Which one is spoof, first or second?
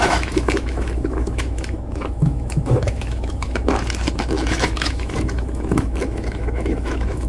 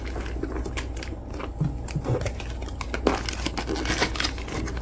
first